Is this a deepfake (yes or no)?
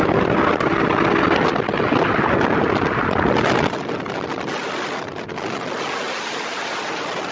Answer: no